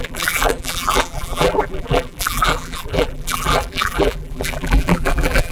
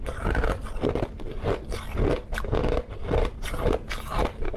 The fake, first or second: first